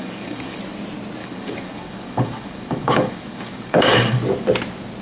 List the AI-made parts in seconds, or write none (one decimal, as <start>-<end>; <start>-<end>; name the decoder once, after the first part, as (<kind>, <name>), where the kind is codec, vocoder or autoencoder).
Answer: 0.0-0.6 (codec, DAC); 1.2-4.2